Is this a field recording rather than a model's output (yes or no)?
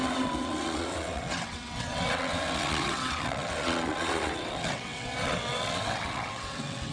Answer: no